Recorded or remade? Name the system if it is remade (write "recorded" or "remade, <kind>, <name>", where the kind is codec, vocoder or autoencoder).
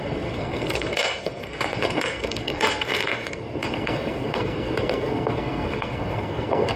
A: remade, codec, SNAC